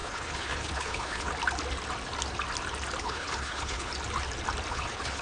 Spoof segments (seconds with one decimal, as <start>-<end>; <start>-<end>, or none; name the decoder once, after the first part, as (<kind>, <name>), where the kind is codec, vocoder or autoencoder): 0.0-1.3 (codec, HILCodec); 3.0-3.9; 4.7-5.2